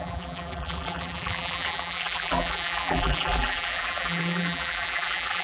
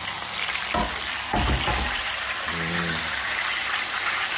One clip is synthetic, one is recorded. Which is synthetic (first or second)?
first